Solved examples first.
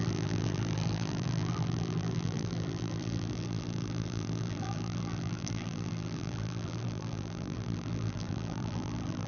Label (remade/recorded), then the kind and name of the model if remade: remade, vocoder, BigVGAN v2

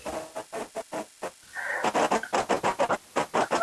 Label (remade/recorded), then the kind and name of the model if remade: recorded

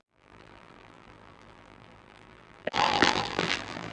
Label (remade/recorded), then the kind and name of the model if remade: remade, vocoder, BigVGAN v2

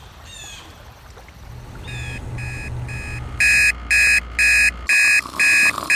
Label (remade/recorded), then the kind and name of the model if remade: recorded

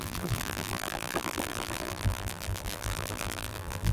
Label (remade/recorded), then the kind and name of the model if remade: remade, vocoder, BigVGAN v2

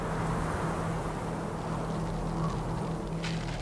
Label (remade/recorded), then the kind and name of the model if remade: recorded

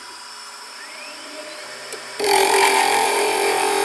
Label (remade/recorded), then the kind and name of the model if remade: remade, vocoder, BigVGAN v2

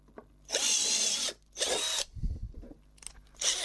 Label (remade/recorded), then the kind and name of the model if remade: recorded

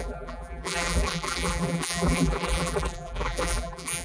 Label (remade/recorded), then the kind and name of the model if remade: remade, vocoder, BigVGAN v2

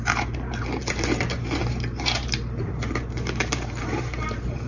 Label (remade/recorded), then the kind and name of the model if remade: remade, vocoder, BigVGAN v2